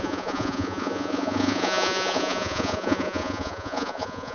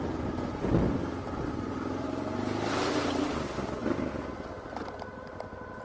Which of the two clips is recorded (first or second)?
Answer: second